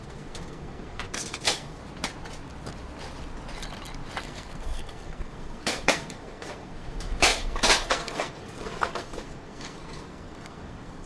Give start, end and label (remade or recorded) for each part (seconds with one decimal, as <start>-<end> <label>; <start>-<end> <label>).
0.0-1.8 remade; 1.8-4.2 recorded; 4.2-11.1 remade